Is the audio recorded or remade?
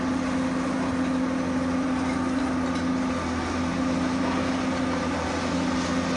recorded